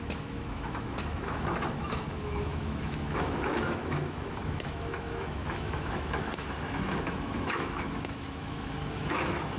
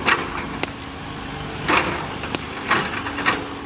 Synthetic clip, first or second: first